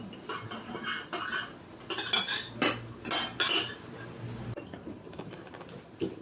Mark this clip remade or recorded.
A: recorded